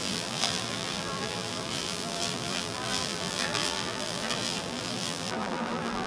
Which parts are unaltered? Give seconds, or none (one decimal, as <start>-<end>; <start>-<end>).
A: none